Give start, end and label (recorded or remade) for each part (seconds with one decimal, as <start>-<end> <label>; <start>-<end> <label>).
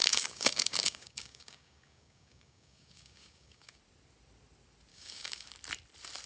0.0-3.8 remade; 3.8-4.9 recorded; 4.9-5.5 remade; 5.5-6.3 recorded